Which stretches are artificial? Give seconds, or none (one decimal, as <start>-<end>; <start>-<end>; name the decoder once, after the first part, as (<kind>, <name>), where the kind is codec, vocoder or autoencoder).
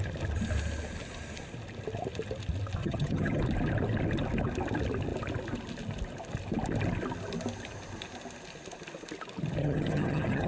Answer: 2.8-3.4 (vocoder, HiFi-GAN); 9.6-10.5